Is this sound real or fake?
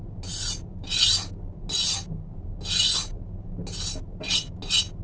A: real